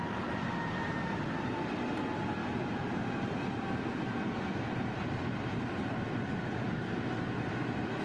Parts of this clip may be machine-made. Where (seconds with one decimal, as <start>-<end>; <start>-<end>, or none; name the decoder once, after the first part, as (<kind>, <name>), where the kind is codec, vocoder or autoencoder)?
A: none